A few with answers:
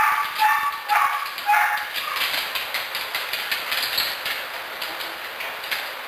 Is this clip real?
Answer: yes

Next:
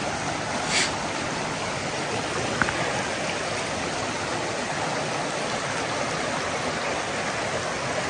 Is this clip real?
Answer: yes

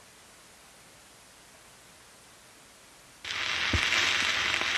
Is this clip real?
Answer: yes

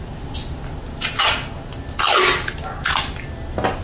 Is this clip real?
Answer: yes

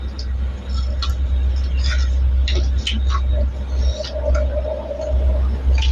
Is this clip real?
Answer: yes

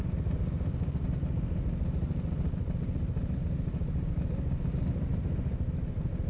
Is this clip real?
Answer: yes